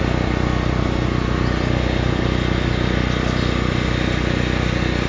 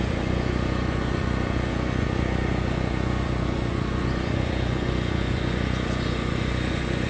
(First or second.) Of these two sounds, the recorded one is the first